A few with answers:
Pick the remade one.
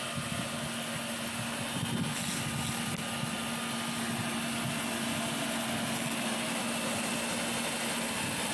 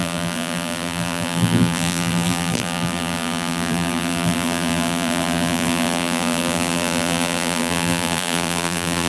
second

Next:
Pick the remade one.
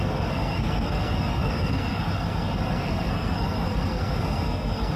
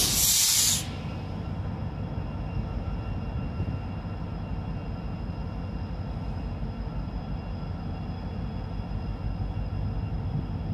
first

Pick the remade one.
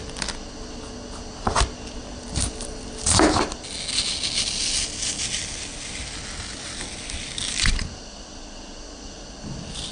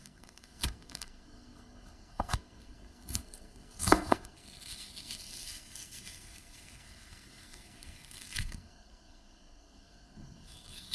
second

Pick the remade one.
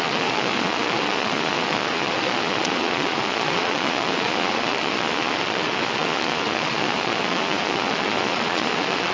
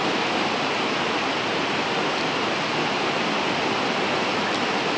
first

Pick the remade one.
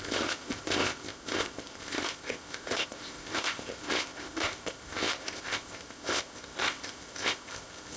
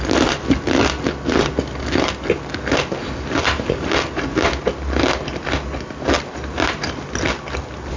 first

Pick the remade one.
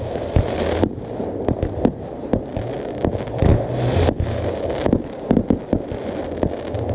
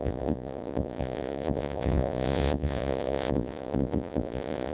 second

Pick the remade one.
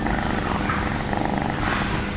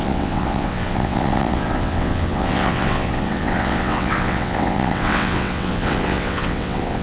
second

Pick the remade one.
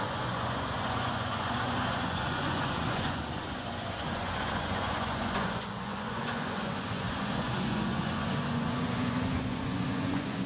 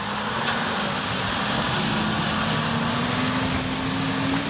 first